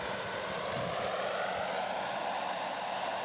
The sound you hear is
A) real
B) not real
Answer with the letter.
A